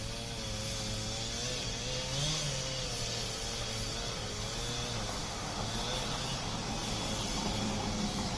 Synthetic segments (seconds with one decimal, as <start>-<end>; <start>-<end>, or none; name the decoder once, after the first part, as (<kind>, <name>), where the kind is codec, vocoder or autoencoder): 5.2-5.7 (autoencoder, DAC-VAE)